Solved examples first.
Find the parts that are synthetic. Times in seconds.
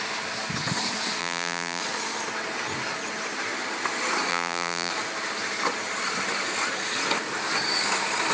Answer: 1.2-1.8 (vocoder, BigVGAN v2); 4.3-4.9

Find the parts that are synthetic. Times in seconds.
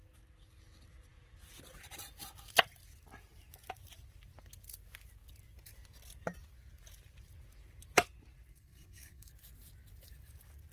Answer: 8.5-9.3 (codec, SNAC)